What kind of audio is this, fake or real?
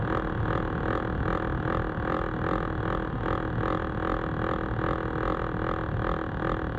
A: real